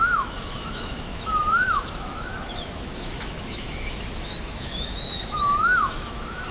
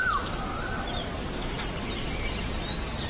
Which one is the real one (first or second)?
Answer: second